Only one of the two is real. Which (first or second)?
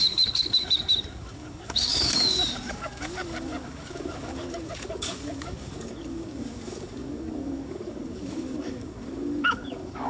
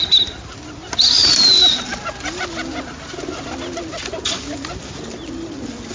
second